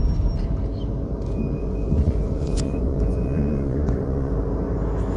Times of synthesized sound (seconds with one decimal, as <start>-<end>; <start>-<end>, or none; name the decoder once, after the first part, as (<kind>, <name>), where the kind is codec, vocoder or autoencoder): 1.6-4.3 (vocoder, Vocos)

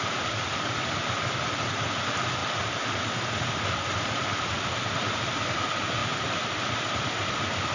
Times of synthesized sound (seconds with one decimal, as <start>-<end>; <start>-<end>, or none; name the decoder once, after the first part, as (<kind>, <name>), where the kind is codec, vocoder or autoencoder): none

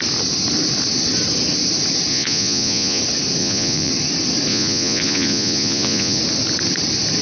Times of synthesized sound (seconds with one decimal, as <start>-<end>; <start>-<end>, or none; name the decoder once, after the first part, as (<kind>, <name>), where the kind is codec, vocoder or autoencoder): 2.1-3.0 (vocoder, Vocos); 3.4-3.9; 4.5-6.2

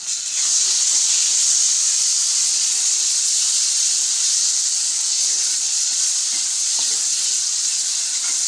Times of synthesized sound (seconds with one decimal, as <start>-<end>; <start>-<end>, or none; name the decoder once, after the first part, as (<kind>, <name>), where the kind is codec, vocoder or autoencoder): 2.5-3.3 (vocoder, Vocos); 5.2-6.2

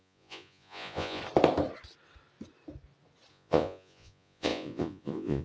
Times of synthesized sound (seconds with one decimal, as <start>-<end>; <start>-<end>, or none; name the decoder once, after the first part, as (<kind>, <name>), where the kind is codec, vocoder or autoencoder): 0.0-1.2 (vocoder, Vocos); 3.3-5.4

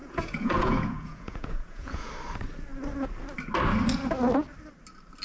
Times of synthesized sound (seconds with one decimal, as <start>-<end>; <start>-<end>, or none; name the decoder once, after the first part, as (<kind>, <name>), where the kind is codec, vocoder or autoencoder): 0.0-2.1 (vocoder, Vocos)

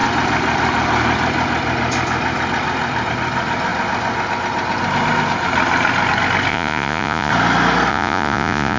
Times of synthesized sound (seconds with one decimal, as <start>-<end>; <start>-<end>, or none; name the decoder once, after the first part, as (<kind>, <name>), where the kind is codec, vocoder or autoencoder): 6.5-7.3 (vocoder, Vocos); 7.9-8.8

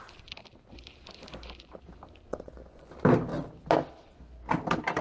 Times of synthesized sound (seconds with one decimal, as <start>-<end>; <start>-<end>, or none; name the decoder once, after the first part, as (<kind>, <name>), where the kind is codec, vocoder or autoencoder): 2.3-2.9 (vocoder, Vocos)